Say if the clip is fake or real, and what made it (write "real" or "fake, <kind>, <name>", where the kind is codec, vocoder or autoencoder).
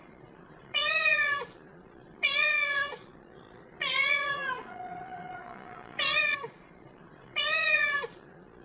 fake, vocoder, Vocos